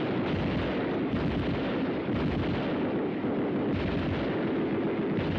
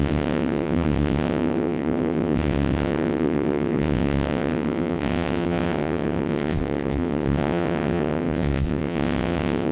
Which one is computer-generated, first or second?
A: second